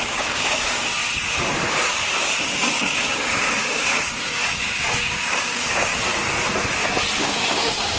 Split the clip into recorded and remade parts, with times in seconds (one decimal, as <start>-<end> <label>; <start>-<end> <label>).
0.0-1.0 remade; 1.0-2.4 recorded; 2.4-5.9 remade; 5.9-7.2 recorded; 7.2-8.0 remade